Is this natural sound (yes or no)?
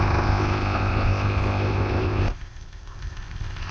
no